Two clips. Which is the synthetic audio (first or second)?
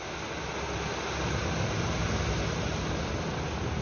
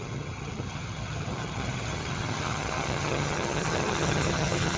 second